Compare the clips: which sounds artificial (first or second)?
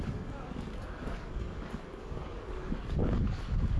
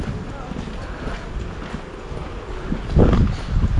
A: first